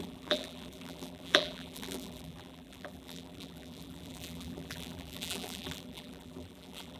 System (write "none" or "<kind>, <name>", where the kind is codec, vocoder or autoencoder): vocoder, BigVGAN v2